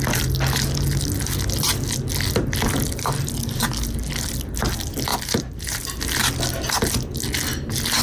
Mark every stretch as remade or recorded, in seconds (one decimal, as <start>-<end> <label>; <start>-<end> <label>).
0.0-5.1 recorded; 5.1-6.0 remade; 6.0-8.0 recorded